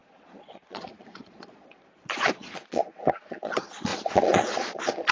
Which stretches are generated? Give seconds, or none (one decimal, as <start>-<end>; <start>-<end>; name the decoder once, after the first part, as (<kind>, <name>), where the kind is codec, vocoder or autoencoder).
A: 0.0-5.1 (vocoder, Vocos)

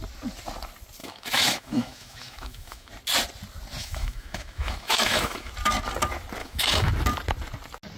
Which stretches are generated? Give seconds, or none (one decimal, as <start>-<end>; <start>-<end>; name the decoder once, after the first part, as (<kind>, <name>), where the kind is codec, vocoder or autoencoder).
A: 1.0-2.9 (autoencoder, DAC-VAE); 3.8-5.5; 6.4-6.9

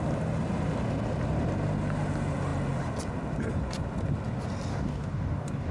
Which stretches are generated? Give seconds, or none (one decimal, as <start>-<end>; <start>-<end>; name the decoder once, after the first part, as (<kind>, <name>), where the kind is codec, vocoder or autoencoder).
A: 4.7-5.7 (codec, DAC)

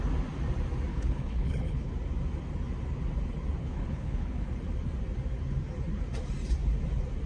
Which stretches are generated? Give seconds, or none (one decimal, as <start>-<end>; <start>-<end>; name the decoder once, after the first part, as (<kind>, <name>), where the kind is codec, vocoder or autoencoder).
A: 0.9-1.9 (codec, HILCodec); 3.6-4.5

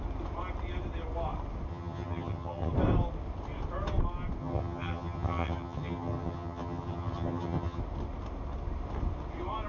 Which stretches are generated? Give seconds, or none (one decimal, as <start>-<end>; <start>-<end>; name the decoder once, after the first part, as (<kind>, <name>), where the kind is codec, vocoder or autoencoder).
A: 1.7-2.7 (vocoder, HiFi-GAN); 4.4-7.8

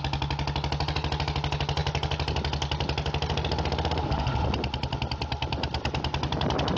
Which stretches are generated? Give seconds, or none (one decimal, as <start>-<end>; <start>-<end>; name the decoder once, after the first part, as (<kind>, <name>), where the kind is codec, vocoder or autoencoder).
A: none